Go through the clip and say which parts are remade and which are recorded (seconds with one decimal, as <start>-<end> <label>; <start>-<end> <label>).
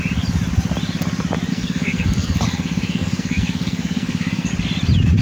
0.0-1.5 recorded; 1.5-4.5 remade; 4.5-5.2 recorded